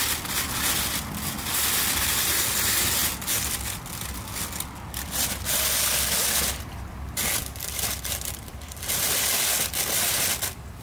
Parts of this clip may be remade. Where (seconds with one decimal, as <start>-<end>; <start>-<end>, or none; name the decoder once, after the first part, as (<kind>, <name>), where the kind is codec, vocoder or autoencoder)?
7.4-9.2 (vocoder, BigVGAN v2)